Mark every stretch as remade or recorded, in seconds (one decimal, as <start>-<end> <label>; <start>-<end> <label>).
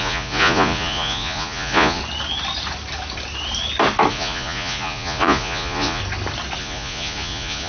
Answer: 0.0-2.0 remade; 2.0-4.1 recorded; 4.1-6.0 remade; 6.0-6.6 recorded; 6.6-7.7 remade